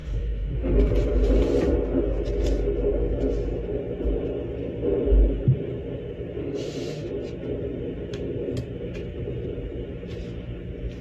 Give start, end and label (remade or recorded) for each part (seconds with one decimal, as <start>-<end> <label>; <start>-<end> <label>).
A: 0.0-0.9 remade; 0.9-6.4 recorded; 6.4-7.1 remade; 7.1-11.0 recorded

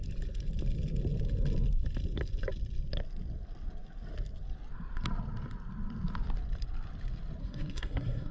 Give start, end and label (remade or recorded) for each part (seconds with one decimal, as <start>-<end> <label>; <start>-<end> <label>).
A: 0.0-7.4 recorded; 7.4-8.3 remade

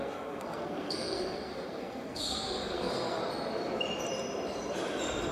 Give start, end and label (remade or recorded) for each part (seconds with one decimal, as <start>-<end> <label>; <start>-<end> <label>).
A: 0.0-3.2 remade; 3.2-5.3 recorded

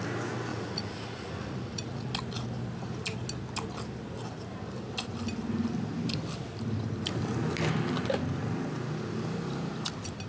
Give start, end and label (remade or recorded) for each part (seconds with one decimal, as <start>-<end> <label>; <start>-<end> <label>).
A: 0.0-0.5 recorded; 0.5-2.1 remade; 2.1-10.3 recorded

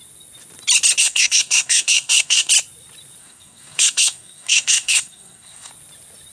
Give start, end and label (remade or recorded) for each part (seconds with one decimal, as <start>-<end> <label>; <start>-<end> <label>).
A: 0.0-1.0 recorded; 1.0-2.5 remade; 2.5-3.2 recorded; 3.2-5.7 remade; 5.7-6.3 recorded